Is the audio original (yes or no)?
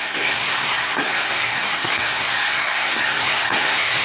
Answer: no